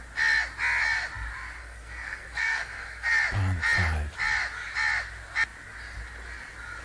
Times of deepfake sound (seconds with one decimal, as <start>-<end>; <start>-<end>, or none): 1.6-3.1